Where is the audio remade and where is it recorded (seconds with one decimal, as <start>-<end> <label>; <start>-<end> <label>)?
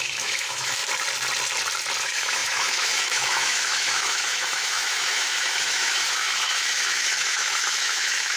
0.0-0.8 remade; 0.8-2.0 recorded; 2.0-8.4 remade